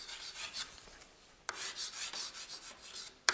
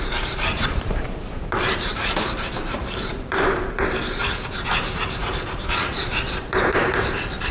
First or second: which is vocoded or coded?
second